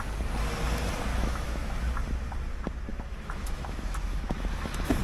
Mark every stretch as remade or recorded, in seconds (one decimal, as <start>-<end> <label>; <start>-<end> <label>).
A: 0.0-1.1 recorded; 1.1-1.7 remade; 1.7-2.9 recorded; 2.9-5.0 remade